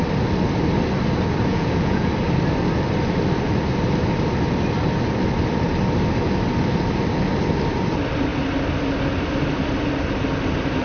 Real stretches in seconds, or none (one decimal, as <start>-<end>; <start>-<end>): 0.0-1.5; 2.1-10.8